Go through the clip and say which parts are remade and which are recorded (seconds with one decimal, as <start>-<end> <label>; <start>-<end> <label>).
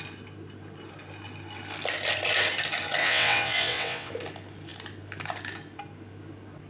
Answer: 0.0-3.0 recorded; 3.0-4.1 remade; 4.1-6.7 recorded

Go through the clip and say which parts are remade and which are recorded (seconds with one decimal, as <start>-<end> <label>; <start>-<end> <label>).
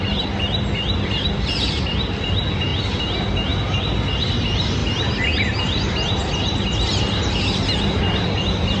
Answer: 0.0-8.8 recorded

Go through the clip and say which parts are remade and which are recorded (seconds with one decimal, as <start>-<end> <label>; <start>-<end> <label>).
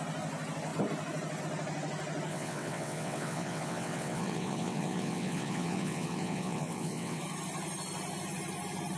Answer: 0.0-2.3 recorded; 2.3-7.2 remade; 7.2-9.0 recorded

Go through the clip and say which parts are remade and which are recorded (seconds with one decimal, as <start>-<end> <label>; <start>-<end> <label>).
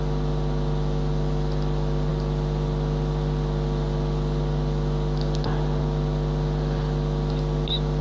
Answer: 0.0-8.0 recorded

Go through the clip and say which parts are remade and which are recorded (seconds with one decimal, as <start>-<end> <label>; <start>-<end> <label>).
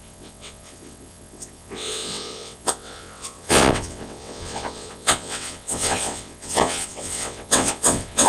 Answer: 0.0-8.3 remade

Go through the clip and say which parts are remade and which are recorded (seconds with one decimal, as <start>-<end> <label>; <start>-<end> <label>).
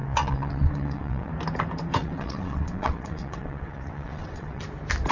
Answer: 0.0-1.3 remade; 1.3-2.0 recorded; 2.0-4.6 remade; 4.6-5.1 recorded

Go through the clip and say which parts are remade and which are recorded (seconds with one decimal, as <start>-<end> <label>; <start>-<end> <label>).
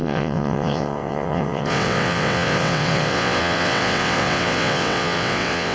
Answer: 0.0-5.7 remade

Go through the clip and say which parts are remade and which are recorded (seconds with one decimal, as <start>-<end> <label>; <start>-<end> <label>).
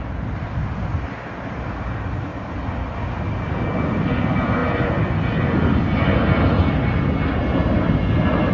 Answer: 0.0-8.5 recorded